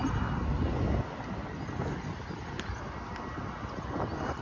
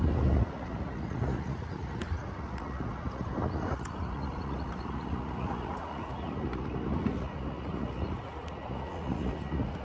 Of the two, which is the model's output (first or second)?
second